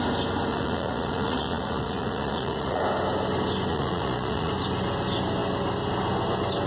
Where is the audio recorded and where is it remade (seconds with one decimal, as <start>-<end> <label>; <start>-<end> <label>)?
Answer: 0.0-0.5 recorded; 0.5-2.8 remade; 2.8-3.7 recorded; 3.7-4.5 remade; 4.5-6.7 recorded

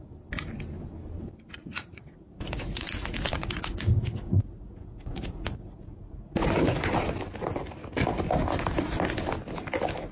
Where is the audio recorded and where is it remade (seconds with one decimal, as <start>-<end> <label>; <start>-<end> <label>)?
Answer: 0.0-1.6 recorded; 1.6-6.8 remade; 6.8-10.1 recorded

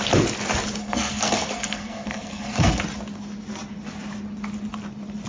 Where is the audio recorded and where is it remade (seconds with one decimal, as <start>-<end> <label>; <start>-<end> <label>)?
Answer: 0.0-0.8 recorded; 0.8-2.8 remade; 2.8-5.3 recorded